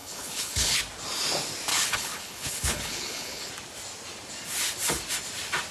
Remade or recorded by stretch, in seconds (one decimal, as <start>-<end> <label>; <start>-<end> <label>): 0.0-0.8 remade; 0.8-1.7 recorded; 1.7-3.5 remade; 3.5-5.7 recorded